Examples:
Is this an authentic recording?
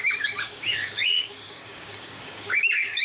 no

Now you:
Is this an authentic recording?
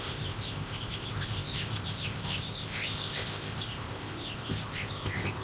no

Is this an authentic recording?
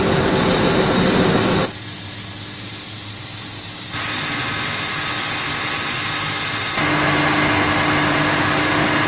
yes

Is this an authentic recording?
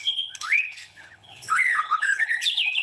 no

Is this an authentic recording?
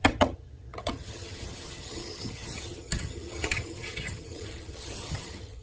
no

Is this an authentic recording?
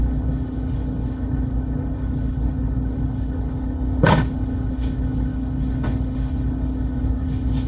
no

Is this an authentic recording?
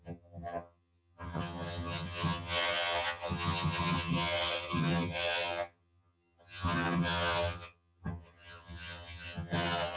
no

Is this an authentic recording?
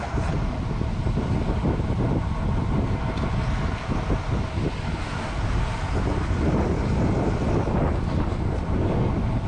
yes